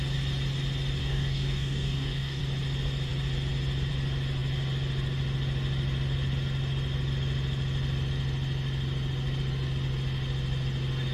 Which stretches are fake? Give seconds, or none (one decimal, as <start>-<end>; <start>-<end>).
1.0-2.4